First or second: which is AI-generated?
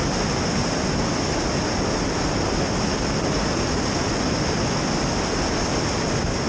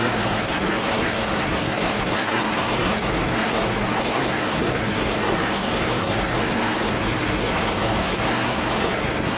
second